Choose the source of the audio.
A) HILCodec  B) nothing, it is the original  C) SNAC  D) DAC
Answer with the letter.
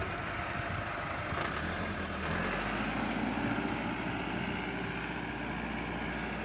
B